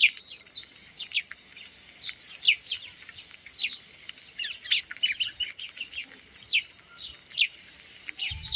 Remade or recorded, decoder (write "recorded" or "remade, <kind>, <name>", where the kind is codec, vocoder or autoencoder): recorded